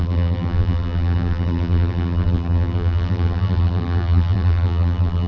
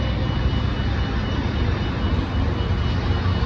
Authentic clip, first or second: second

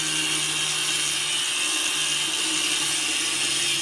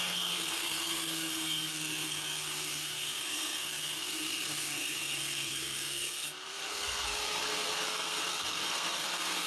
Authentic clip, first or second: first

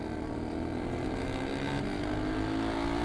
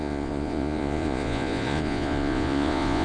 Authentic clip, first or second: first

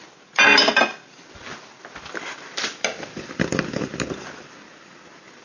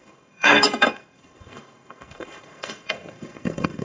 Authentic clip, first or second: first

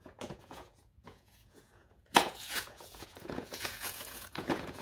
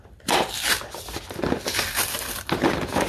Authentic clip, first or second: second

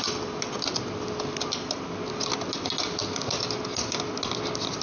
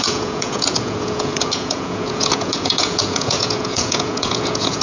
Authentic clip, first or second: first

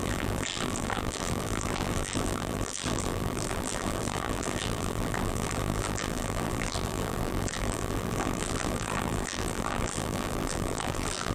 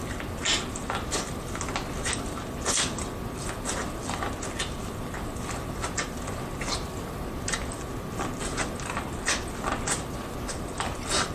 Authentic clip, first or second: second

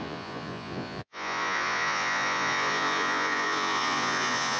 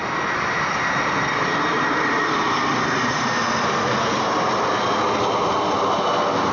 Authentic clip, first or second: second